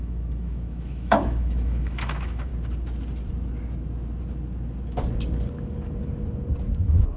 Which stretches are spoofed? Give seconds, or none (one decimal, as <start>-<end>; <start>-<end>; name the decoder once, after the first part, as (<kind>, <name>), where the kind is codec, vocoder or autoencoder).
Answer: 0.0-2.5 (autoencoder, DAC-VAE); 6.8-7.2